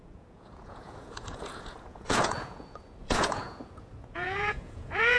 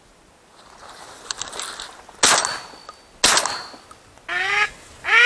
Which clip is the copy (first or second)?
first